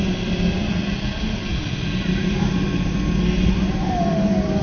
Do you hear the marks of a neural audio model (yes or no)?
no